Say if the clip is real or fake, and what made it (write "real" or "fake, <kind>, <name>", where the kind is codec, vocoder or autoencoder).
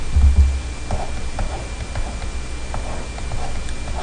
real